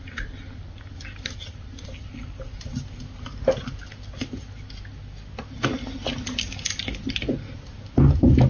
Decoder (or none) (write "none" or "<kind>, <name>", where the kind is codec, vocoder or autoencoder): none